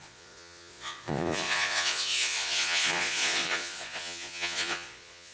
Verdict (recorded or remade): remade